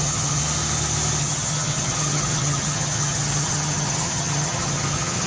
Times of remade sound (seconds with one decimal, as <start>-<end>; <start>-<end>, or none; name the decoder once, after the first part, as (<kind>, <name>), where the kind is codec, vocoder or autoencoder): 0.0-0.4 (vocoder, HiFi-GAN); 1.2-5.3